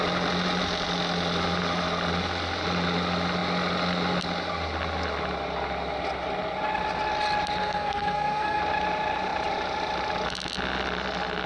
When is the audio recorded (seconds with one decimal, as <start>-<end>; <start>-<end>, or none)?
0.0-7.6; 8.6-11.5